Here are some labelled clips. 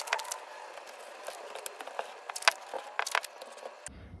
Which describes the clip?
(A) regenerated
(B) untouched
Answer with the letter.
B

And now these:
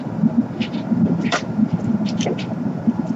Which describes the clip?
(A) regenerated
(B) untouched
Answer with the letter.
A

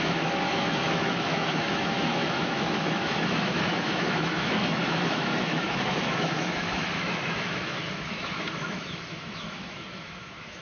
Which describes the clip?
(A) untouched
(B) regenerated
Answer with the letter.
B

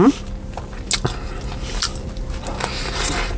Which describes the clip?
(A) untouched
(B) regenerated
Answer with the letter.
A